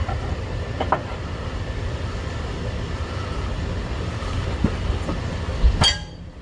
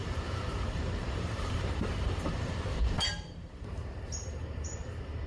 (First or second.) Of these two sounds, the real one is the first